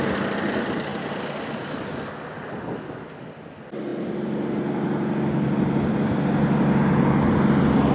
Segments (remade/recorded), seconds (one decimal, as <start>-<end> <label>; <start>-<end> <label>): 0.0-7.9 recorded